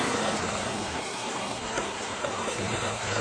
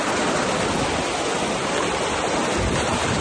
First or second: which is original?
second